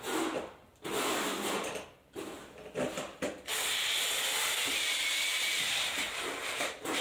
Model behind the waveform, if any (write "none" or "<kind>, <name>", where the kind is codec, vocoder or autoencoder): none